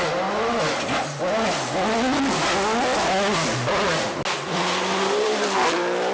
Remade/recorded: recorded